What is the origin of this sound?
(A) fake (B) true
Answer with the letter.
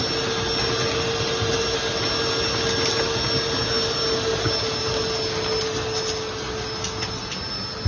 B